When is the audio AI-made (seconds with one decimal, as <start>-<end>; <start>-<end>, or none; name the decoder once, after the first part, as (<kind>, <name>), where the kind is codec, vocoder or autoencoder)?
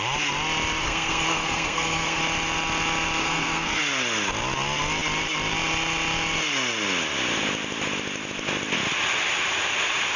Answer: 0.8-2.2 (codec, SNAC); 3.2-3.8